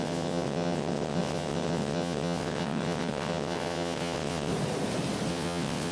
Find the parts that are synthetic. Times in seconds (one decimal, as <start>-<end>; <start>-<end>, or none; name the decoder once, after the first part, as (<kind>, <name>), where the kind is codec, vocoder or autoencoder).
0.0-4.5 (vocoder, WaveNeXt); 5.3-5.9